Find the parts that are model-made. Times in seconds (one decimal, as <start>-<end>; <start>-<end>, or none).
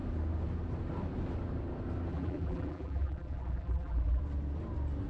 2.1-4.2